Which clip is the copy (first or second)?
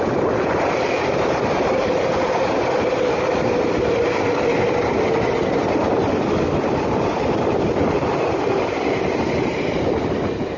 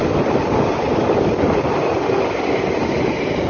first